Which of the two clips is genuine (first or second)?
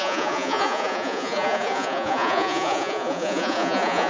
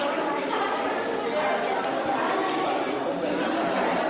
second